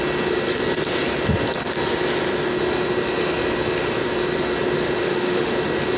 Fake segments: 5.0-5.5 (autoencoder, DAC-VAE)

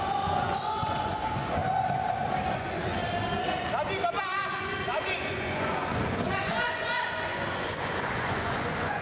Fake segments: 0.0-1.6 (vocoder, Vocos); 2.5-3.0; 4.2-9.0

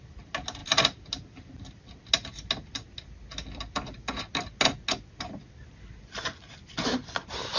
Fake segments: none

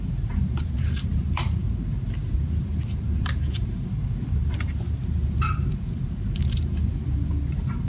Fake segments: 0.0-5.0 (vocoder, BigVGAN v2); 5.7-7.9

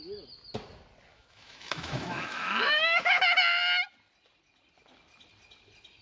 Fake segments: 1.1-3.2 (autoencoder, DAC-VAE)

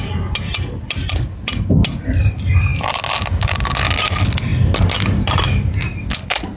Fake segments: none

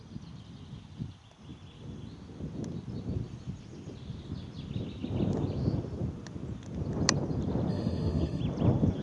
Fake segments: 7.7-8.4 (autoencoder, DAC-VAE)